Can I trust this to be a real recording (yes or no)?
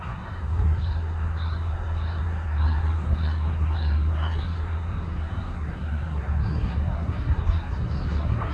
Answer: no